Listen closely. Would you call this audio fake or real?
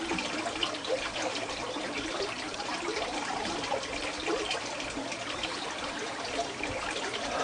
fake